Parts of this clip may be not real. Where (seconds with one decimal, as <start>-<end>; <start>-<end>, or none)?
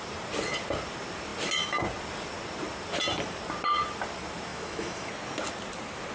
4.5-5.1